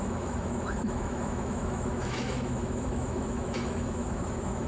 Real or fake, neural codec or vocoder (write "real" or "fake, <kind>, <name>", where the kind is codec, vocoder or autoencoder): fake, autoencoder, DAC-VAE